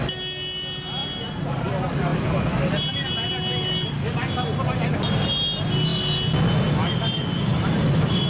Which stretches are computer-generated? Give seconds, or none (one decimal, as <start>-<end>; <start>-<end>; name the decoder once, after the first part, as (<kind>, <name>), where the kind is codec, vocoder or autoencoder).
2.1-3.3 (vocoder, BigVGAN v2); 7.5-8.3